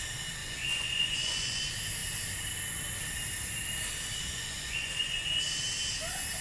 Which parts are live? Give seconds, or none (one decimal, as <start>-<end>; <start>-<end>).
0.0-0.4; 1.6-4.3; 5.4-6.4